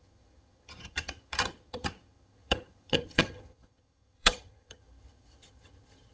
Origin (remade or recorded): remade